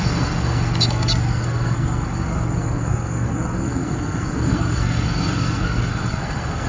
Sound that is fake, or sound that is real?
fake